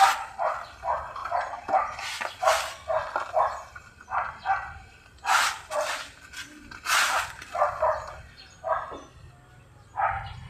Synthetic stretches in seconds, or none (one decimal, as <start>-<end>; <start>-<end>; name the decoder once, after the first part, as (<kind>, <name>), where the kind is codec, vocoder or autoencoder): none